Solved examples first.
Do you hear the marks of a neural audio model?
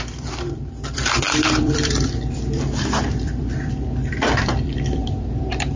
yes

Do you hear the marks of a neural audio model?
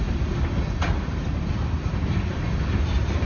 no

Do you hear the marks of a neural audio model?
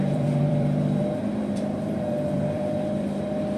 yes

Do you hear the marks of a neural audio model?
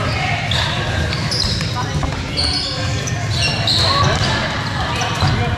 no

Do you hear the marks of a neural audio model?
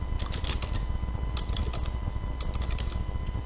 yes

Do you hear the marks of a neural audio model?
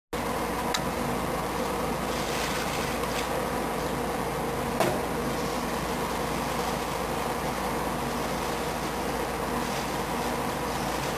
no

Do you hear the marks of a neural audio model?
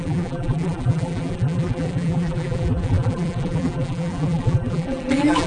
yes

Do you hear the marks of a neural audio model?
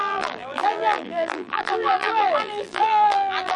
yes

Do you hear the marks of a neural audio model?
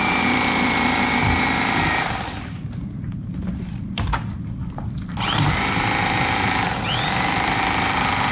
yes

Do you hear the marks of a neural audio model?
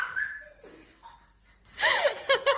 yes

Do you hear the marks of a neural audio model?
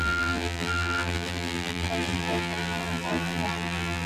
yes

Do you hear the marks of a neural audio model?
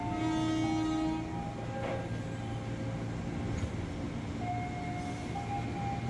no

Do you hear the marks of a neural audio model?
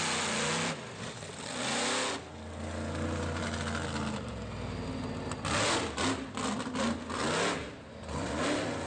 no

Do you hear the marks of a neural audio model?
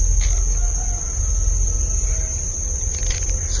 no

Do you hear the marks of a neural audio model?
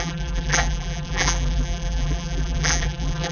yes